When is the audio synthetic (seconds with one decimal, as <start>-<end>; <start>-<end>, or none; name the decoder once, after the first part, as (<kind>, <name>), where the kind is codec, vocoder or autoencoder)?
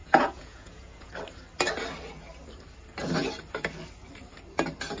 0.0-1.1 (vocoder, Vocos)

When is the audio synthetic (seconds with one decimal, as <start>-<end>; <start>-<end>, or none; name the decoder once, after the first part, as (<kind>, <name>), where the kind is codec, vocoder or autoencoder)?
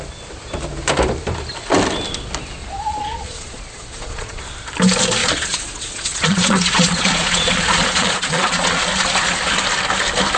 2.6-4.4 (vocoder, Vocos); 5.2-8.8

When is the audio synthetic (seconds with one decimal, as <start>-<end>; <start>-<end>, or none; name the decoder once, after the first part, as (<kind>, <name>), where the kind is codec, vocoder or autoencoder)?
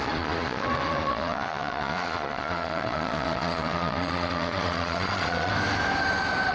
0.0-5.5 (vocoder, Vocos)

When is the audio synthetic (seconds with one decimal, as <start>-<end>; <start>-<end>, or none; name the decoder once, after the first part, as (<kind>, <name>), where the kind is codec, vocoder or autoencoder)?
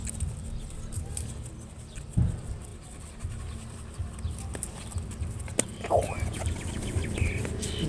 5.7-6.4 (vocoder, Vocos)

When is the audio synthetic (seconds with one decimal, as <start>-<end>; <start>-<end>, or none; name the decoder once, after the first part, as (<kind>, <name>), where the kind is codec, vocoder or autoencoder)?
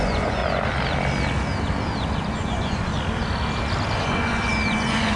0.0-0.4 (vocoder, Vocos); 2.3-2.9; 4.0-5.2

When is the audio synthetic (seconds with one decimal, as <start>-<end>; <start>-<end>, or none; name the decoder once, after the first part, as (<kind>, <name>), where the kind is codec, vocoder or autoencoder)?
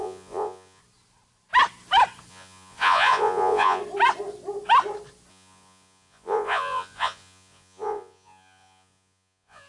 0.0-0.8 (vocoder, Vocos); 2.3-3.8; 5.3-9.7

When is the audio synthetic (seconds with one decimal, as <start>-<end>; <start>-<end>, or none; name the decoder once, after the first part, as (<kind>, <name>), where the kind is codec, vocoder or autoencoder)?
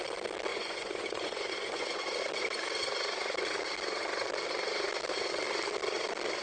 0.5-2.2 (vocoder, Vocos)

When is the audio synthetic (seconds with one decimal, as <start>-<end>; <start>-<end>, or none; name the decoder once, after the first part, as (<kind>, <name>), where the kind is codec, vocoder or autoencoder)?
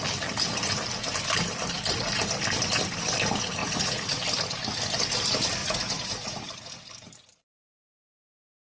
3.6-4.2 (vocoder, Vocos); 5.6-6.5